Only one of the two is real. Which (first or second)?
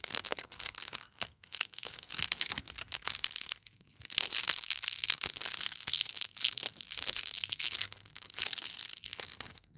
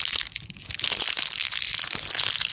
second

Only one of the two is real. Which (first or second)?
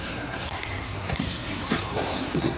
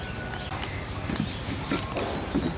second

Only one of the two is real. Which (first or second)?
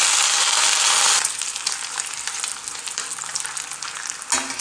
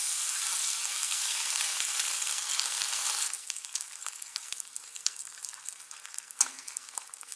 first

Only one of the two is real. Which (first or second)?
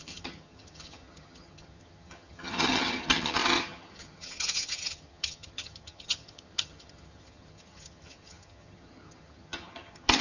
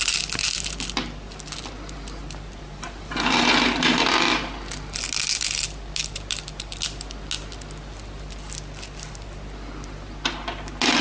second